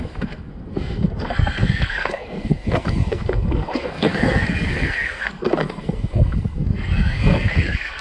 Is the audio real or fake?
fake